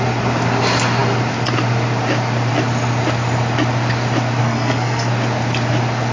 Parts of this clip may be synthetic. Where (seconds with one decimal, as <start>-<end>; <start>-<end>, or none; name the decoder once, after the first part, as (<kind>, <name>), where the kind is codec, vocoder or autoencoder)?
4.4-5.1 (codec, SNAC)